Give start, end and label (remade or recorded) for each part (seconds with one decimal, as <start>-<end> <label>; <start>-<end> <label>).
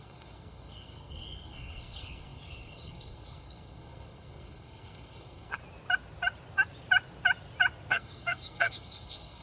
0.0-5.6 remade; 5.6-7.9 recorded; 7.9-9.4 remade